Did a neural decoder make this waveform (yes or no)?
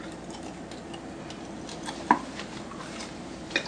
no